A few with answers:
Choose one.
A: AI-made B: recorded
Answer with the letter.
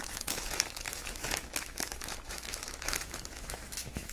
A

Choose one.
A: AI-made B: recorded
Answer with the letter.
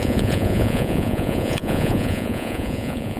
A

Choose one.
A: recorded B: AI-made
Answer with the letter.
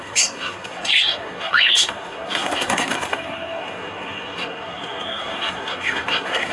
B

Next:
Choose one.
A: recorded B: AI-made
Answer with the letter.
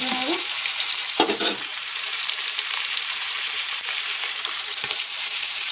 B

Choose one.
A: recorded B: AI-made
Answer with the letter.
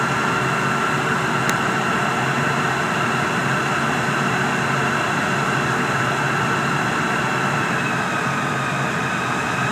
A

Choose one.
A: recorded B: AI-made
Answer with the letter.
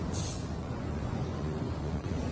B